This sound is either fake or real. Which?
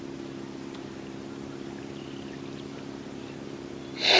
real